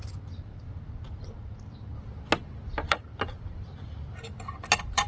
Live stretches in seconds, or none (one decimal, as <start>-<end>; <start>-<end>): 0.0-5.1